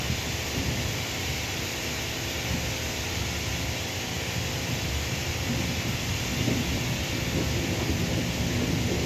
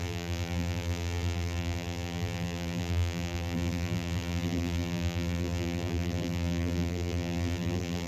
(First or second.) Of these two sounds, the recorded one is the first